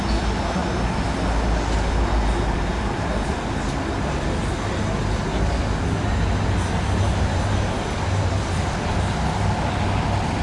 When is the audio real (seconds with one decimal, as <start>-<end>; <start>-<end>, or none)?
0.0-10.4